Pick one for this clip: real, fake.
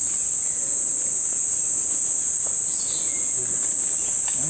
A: real